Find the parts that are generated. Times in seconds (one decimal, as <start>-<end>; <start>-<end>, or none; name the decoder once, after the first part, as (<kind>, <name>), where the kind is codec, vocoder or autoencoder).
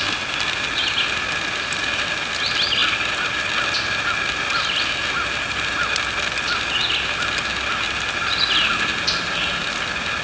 none